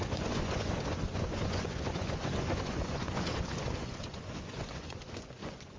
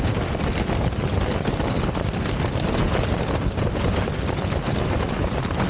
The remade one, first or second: first